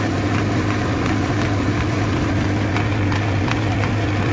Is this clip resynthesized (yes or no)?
no